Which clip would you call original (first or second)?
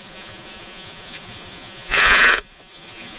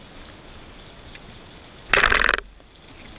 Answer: second